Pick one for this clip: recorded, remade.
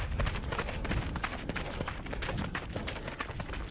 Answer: recorded